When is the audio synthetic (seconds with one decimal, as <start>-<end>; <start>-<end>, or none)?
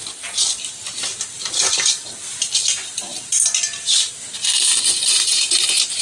4.9-6.0